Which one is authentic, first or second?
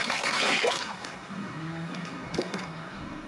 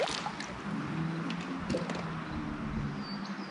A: second